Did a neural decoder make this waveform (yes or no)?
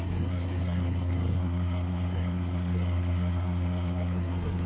yes